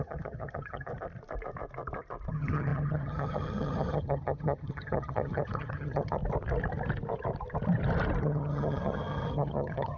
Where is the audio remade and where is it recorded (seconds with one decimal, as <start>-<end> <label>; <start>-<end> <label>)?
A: 0.0-0.9 remade; 0.9-2.3 recorded; 2.3-6.2 remade; 6.2-8.2 recorded; 8.2-10.0 remade

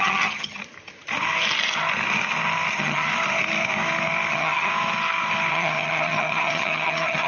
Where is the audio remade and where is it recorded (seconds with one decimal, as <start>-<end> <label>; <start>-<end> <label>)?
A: 0.0-0.6 remade; 0.6-2.7 recorded; 2.7-3.1 remade; 3.1-4.3 recorded; 4.3-4.7 remade; 4.7-5.5 recorded; 5.5-7.3 remade

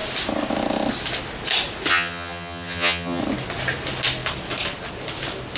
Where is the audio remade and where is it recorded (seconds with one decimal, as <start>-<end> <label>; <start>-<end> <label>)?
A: 0.0-1.9 recorded; 1.9-3.2 remade; 3.2-5.6 recorded